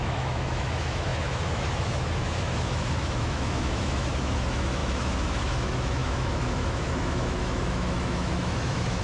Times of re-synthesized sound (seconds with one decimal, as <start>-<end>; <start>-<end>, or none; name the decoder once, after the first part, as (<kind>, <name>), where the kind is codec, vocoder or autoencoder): 0.0-9.0 (autoencoder, DAC-VAE)